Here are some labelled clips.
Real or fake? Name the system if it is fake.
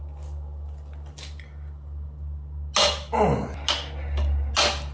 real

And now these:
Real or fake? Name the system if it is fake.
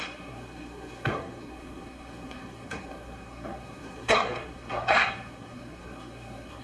fake, codec, SNAC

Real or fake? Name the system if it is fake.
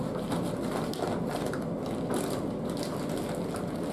real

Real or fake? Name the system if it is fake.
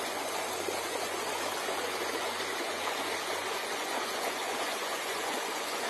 fake, vocoder, Vocos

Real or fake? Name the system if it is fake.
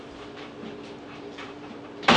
fake, vocoder, BigVGAN v2